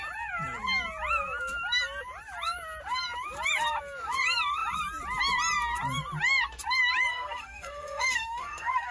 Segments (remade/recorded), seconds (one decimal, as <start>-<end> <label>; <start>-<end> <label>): 0.0-7.1 recorded; 7.1-8.9 remade